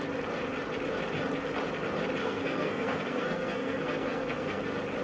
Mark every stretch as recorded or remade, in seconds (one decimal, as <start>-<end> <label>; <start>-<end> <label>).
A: 0.0-2.2 recorded; 2.2-4.6 remade; 4.6-5.0 recorded